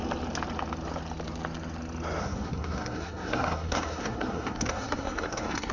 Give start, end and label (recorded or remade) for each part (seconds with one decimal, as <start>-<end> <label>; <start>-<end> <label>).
0.0-2.2 recorded; 2.2-5.7 remade